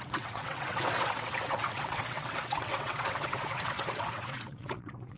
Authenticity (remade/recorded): remade